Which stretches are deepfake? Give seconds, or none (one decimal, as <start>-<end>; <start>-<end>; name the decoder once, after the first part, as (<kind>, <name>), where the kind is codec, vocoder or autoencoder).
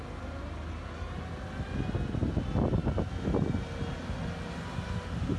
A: none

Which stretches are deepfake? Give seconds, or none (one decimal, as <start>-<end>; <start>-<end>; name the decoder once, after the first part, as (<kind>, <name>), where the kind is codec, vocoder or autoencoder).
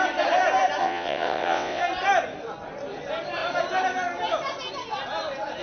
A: 0.8-1.8 (vocoder, WaveNeXt)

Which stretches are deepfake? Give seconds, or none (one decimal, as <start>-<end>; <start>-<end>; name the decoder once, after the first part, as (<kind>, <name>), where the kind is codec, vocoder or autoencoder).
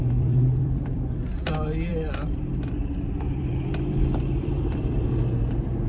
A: 0.0-1.5 (vocoder, BigVGAN v2); 1.9-5.4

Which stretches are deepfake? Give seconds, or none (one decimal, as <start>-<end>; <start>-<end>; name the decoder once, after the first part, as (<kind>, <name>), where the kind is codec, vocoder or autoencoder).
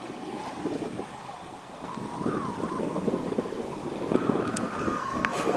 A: 0.0-0.4 (codec, SNAC); 1.1-2.1; 2.8-5.6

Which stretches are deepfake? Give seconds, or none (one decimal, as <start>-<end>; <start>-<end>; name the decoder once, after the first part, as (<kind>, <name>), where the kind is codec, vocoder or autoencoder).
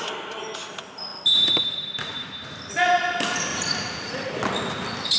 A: 3.5-4.3 (vocoder, Vocos)